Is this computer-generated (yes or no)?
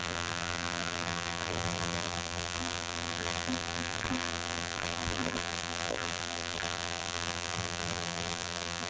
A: yes